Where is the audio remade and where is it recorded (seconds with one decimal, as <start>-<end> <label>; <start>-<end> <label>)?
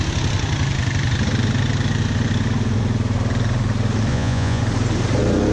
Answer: 0.0-4.1 recorded; 4.1-4.6 remade; 4.6-5.5 recorded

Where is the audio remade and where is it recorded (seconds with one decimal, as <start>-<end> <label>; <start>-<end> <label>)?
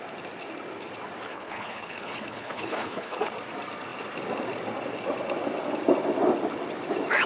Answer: 0.0-1.3 recorded; 1.3-3.3 remade; 3.3-7.3 recorded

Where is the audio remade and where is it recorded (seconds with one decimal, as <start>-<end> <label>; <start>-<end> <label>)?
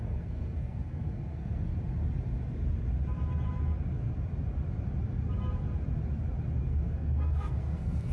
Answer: 0.0-1.7 remade; 1.7-6.6 recorded; 6.6-8.1 remade